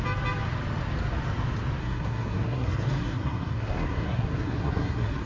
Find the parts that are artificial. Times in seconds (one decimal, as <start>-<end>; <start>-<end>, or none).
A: 1.8-5.3